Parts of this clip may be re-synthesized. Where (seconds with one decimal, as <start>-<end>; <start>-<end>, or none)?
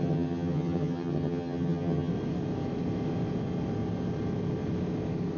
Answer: 0.0-2.1